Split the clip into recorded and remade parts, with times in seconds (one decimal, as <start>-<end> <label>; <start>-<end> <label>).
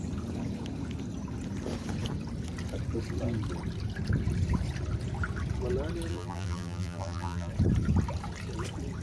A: 0.0-6.1 recorded; 6.1-7.5 remade; 7.5-9.0 recorded